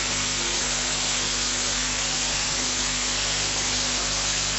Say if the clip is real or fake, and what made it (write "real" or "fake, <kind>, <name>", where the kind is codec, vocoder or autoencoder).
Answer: fake, codec, SNAC